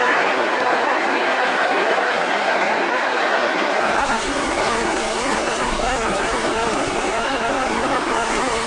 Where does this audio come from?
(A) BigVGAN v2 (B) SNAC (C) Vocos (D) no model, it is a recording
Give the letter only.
B